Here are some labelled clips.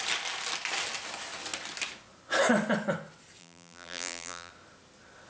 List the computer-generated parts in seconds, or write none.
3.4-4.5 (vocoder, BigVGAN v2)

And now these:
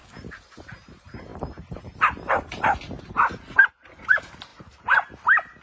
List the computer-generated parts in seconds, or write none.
0.5-5.6 (vocoder, BigVGAN v2)

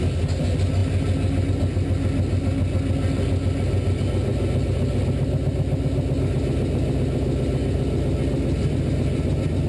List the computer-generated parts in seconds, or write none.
none

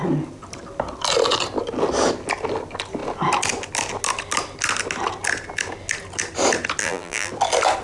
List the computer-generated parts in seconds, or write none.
6.8-7.3 (vocoder, BigVGAN v2)

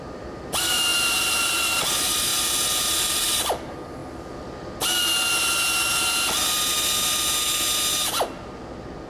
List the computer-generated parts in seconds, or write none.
0.0-0.9 (vocoder, BigVGAN v2); 1.4-4.0

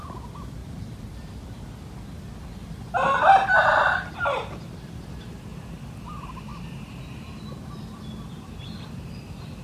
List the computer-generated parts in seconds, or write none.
0.6-1.4 (vocoder, BigVGAN v2)

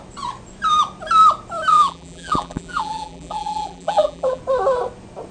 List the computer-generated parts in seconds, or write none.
1.7-4.4 (vocoder, BigVGAN v2)